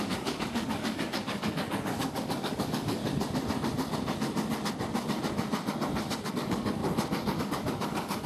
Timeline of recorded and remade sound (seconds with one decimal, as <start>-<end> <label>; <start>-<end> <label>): 0.0-3.0 remade; 3.0-6.3 recorded; 6.3-6.8 remade; 6.8-7.4 recorded; 7.4-8.3 remade